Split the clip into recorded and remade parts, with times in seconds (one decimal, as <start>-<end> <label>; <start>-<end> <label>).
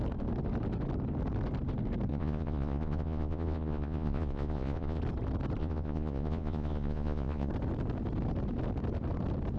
0.0-2.1 recorded; 2.1-5.0 remade; 5.0-5.6 recorded; 5.6-7.5 remade; 7.5-9.6 recorded